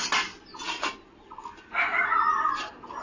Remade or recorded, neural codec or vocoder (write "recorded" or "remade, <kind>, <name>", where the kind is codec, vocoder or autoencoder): recorded